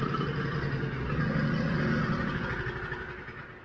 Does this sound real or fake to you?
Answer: real